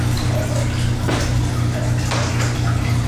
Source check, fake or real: real